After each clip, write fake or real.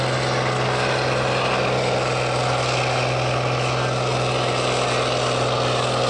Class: real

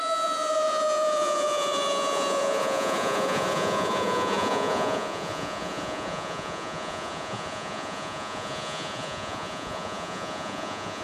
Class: fake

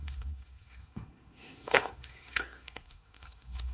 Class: fake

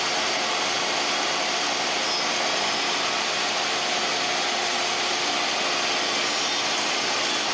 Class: real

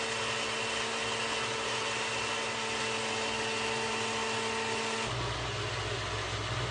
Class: real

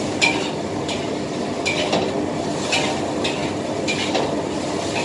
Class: real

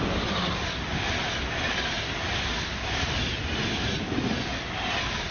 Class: real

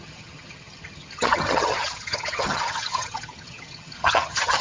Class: fake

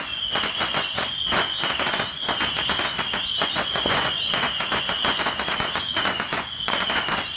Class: fake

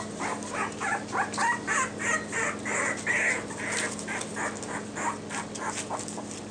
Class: real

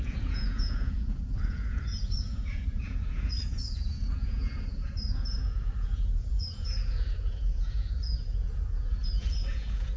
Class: fake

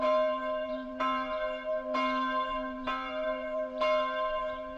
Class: fake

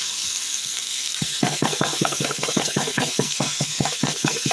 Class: fake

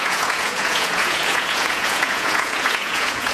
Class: fake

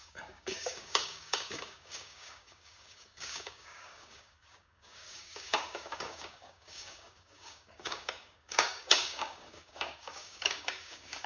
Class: fake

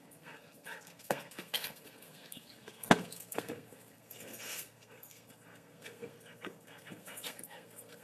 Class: fake